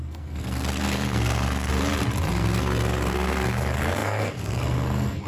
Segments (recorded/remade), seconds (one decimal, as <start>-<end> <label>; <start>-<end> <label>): 0.0-1.7 remade; 1.7-2.3 recorded; 2.3-5.3 remade